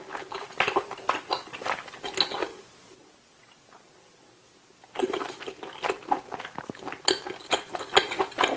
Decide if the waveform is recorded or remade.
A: recorded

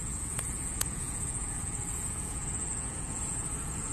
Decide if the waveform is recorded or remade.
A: remade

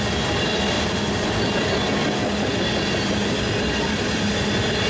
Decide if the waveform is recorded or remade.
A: recorded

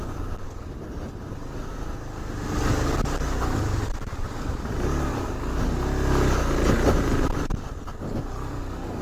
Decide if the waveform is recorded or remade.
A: recorded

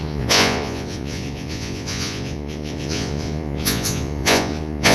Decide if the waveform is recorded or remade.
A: remade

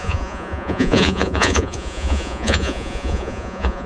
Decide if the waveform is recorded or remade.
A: remade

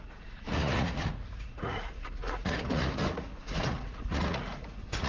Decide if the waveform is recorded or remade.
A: remade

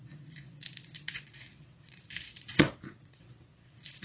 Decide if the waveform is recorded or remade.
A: remade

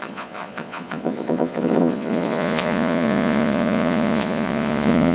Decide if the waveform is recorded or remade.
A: remade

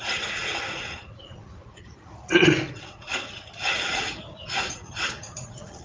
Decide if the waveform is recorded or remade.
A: remade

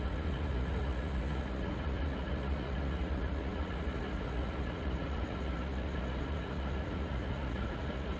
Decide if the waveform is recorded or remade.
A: remade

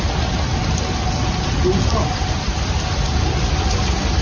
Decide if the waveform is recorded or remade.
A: recorded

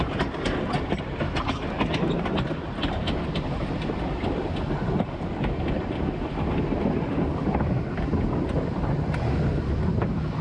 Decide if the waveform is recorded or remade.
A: recorded